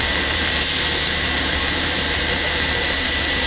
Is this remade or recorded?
remade